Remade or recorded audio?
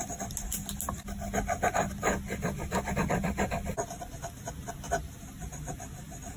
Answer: recorded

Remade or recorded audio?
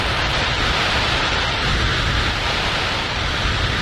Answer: remade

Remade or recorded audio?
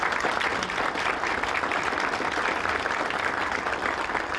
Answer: recorded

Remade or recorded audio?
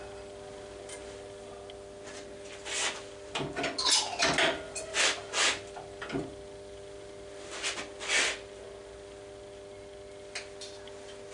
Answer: recorded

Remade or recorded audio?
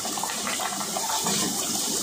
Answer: remade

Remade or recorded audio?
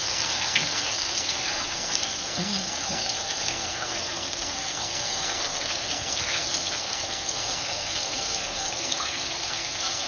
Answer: remade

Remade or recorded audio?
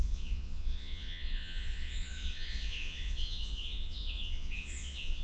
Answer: remade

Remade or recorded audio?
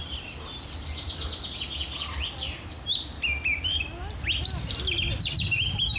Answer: recorded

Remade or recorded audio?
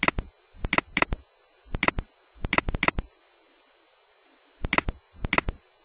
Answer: recorded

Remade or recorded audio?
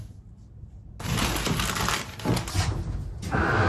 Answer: recorded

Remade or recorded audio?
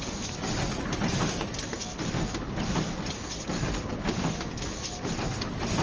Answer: recorded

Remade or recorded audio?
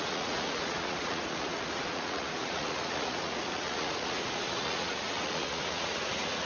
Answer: remade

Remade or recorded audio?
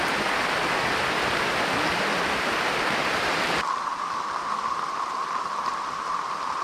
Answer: remade